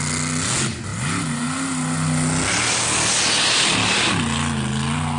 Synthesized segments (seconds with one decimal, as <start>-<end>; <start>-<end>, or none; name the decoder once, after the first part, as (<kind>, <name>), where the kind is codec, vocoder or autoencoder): none